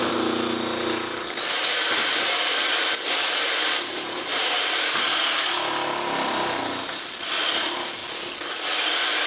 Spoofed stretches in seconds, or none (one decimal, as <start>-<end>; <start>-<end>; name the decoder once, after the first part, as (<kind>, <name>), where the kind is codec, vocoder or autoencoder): none